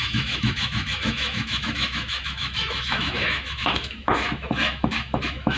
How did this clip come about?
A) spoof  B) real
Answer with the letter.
A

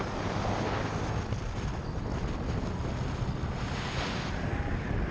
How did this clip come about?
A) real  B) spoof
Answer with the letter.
A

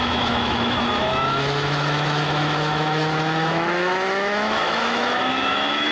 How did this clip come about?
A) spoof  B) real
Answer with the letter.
A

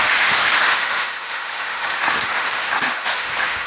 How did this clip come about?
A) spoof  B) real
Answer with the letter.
A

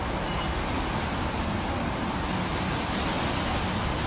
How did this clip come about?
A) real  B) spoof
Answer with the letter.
A